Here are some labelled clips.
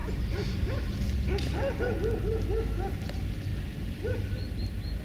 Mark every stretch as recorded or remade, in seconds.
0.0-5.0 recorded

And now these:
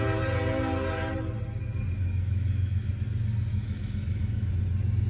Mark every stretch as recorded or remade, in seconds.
0.0-2.0 recorded; 2.0-2.9 remade; 2.9-3.5 recorded; 3.5-4.5 remade; 4.5-5.1 recorded

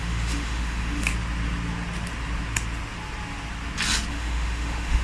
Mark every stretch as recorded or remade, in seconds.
0.0-1.1 remade; 1.1-4.1 recorded; 4.1-5.0 remade

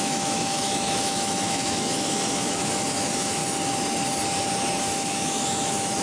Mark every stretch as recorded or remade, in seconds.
0.0-3.4 remade; 3.4-4.8 recorded; 4.8-6.0 remade

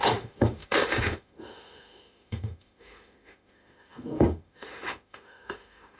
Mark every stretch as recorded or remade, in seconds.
0.0-6.0 remade